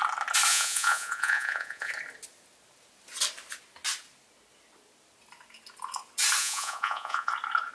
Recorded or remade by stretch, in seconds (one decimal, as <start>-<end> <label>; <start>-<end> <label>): 0.0-0.5 recorded; 0.5-1.9 remade; 1.9-6.4 recorded; 6.4-7.3 remade; 7.3-7.7 recorded